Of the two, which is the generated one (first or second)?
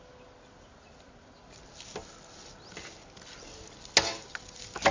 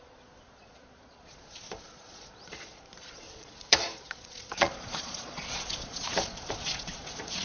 second